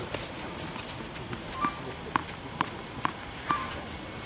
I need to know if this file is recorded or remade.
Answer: recorded